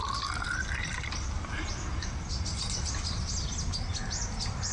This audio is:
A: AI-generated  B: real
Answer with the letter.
B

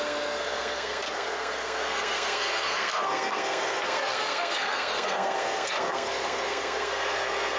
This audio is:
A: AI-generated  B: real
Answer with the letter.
A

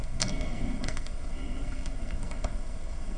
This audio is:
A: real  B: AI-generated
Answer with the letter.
B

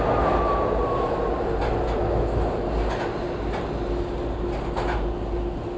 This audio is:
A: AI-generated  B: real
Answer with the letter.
B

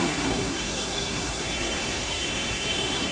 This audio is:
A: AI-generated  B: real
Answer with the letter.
A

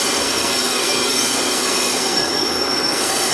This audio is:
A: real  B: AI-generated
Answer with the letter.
B